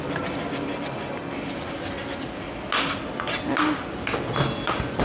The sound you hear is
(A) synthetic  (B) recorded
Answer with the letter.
B